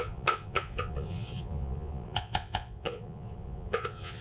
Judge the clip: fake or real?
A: fake